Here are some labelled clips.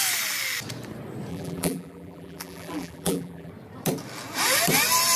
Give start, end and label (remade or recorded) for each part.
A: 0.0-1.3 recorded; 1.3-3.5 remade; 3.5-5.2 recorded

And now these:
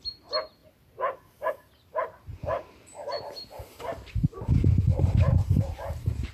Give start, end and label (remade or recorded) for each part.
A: 0.0-0.6 remade; 0.6-1.5 recorded; 1.5-6.3 remade

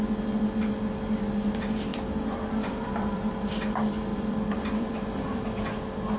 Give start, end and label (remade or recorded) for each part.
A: 0.0-1.9 recorded; 1.9-3.3 remade; 3.3-4.1 recorded; 4.1-6.2 remade

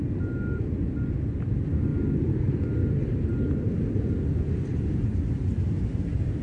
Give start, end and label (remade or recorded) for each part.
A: 0.0-4.7 recorded; 4.7-6.4 remade

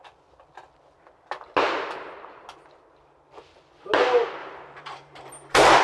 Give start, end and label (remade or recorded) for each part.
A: 0.0-4.4 recorded; 4.4-5.8 remade

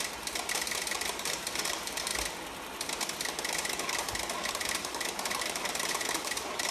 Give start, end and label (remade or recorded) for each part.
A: 0.0-2.1 remade; 2.1-4.5 recorded; 4.5-6.7 remade

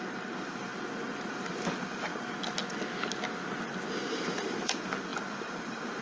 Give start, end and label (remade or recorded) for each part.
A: 0.0-0.7 remade; 0.7-1.3 recorded; 1.3-2.1 remade; 2.1-4.1 recorded; 4.1-6.0 remade